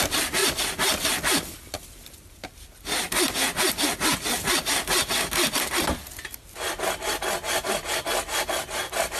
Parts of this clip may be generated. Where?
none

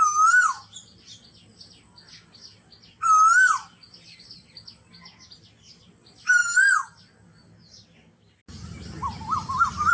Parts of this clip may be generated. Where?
none

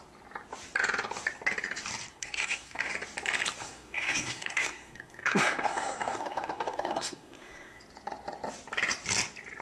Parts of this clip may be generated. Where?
2.1-2.9 (codec, SNAC); 3.6-7.8

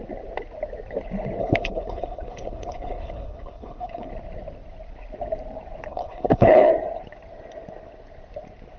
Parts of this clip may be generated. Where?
1.4-4.1 (codec, HILCodec); 5.9-6.7